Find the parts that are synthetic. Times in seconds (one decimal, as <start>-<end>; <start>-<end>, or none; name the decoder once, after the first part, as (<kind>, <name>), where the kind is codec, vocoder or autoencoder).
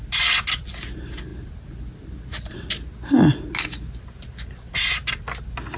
none